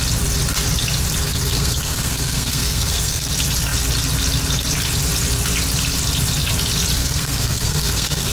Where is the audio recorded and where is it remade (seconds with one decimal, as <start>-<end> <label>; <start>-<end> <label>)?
0.0-1.3 recorded; 1.3-3.3 remade; 3.3-7.0 recorded; 7.0-8.3 remade